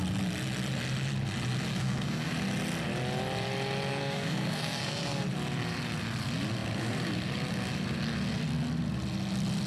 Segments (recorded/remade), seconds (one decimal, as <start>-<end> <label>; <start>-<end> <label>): 0.0-1.7 recorded; 1.7-2.3 remade; 2.3-3.9 recorded; 3.9-5.2 remade; 5.2-9.7 recorded